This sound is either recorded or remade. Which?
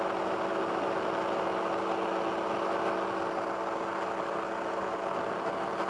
recorded